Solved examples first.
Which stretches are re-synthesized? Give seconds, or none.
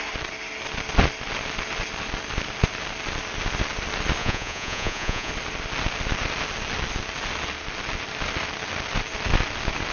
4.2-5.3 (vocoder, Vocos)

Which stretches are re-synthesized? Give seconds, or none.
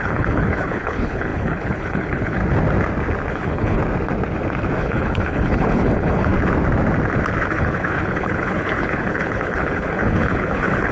0.0-2.4 (codec, HILCodec); 3.3-3.8; 4.8-6.3; 7.5-10.9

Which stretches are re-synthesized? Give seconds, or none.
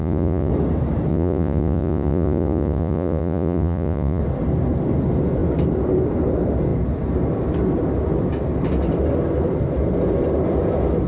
0.0-0.5 (vocoder, Vocos); 1.1-4.2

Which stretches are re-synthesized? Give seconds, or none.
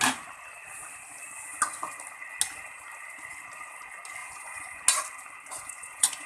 4.2-4.8 (vocoder, Vocos); 5.5-6.3